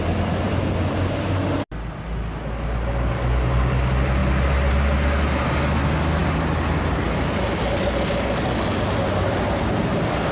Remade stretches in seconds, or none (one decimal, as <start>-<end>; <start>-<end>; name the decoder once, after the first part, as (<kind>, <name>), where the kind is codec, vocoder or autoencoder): 0.0-0.6 (vocoder, BigVGAN v2)